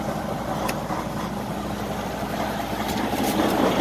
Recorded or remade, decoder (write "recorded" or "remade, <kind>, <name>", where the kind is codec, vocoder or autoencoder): recorded